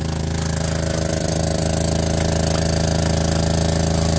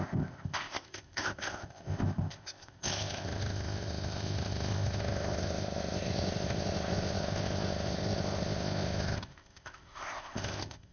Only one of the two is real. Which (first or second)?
first